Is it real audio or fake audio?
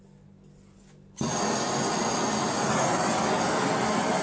real